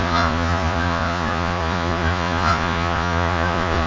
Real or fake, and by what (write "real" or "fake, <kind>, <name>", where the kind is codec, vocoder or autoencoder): fake, vocoder, Vocos